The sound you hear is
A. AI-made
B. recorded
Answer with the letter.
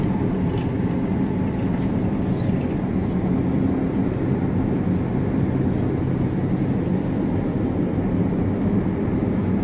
B